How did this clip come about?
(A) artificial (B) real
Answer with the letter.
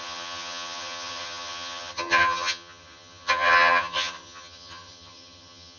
A